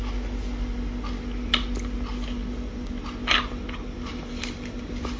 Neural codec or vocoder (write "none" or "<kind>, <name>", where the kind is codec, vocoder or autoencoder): none